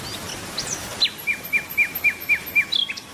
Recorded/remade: recorded